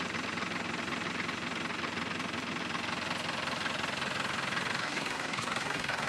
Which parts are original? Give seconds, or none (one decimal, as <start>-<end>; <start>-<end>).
0.0-4.8